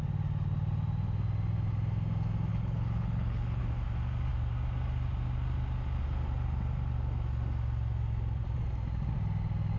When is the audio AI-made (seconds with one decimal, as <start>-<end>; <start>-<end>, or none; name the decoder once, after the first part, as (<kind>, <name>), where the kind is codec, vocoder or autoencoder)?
2.5-3.6 (codec, HILCodec)